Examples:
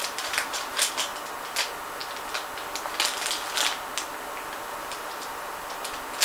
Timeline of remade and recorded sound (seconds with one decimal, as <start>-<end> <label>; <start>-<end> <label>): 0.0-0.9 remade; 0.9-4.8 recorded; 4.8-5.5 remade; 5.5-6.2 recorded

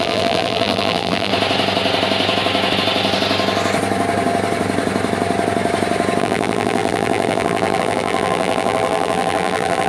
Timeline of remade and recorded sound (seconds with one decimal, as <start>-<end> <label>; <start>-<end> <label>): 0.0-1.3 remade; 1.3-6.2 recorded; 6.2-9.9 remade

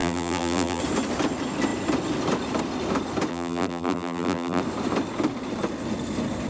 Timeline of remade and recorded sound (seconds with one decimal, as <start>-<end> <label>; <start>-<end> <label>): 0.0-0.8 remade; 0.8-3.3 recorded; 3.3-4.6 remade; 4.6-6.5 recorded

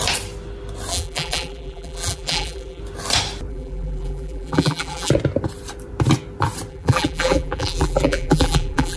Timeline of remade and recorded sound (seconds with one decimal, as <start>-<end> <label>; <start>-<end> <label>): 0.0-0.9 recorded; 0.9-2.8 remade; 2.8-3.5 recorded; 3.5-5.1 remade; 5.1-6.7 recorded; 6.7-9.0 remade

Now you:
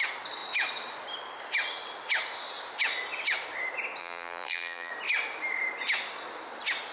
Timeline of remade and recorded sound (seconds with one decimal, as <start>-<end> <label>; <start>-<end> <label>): 0.0-4.0 recorded; 4.0-4.9 remade; 4.9-6.9 recorded

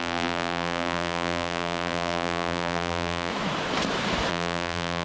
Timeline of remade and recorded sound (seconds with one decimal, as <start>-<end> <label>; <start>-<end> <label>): 0.0-3.3 remade; 3.3-4.3 recorded; 4.3-5.0 remade

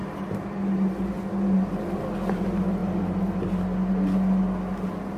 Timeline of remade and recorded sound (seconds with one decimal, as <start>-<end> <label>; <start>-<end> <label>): 0.0-1.1 remade; 1.1-5.2 recorded